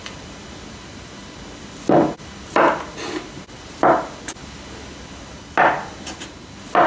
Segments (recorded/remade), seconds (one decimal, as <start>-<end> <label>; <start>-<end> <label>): 0.0-6.9 recorded